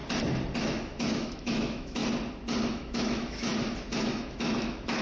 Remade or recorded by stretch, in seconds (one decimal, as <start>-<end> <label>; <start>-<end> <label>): 0.0-0.6 recorded; 0.6-2.0 remade; 2.0-2.7 recorded; 2.7-3.5 remade; 3.5-4.0 recorded; 4.0-5.0 remade